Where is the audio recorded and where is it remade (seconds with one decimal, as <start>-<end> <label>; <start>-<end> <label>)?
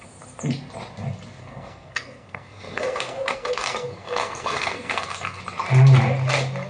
0.0-1.4 recorded; 1.4-5.4 remade; 5.4-6.7 recorded